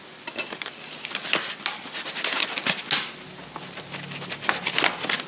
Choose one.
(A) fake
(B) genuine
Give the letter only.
B